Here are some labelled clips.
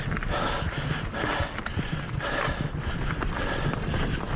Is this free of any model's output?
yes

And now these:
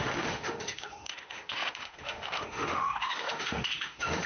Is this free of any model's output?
no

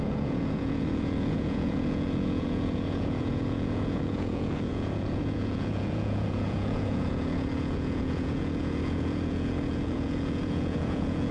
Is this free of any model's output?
no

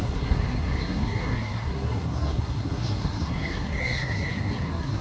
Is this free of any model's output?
no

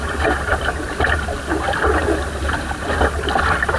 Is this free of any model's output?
yes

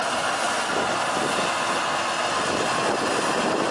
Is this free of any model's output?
yes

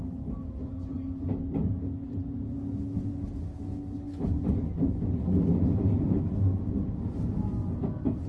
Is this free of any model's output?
yes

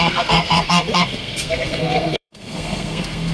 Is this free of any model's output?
no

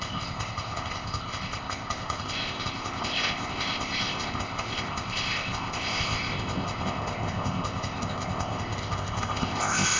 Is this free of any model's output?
no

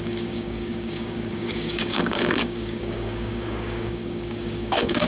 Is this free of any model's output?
no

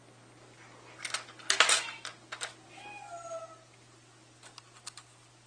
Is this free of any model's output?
yes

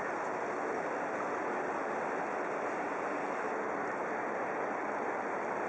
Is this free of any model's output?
yes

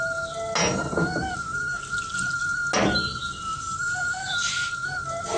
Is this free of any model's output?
yes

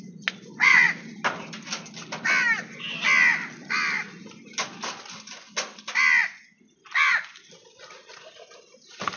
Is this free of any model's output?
yes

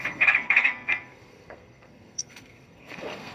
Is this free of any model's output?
no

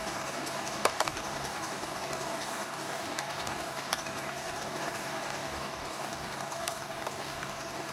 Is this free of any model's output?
no